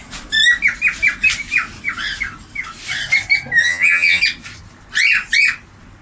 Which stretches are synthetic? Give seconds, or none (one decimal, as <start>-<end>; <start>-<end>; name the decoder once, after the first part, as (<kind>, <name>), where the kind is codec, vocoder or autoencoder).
3.6-4.2 (vocoder, HiFi-GAN)